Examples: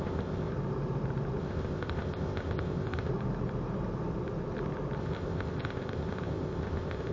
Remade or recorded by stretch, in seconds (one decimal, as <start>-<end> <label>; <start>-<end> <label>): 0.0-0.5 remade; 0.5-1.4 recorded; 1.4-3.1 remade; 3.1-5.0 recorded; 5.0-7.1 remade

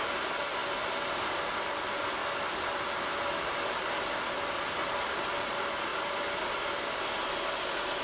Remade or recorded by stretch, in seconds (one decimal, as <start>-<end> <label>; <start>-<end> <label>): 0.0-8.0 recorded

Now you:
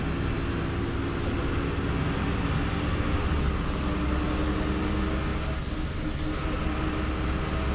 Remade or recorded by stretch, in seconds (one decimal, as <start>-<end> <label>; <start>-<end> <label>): 0.0-7.7 recorded

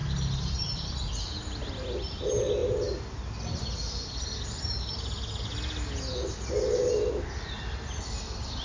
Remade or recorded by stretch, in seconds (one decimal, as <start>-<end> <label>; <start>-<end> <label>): 0.0-8.6 recorded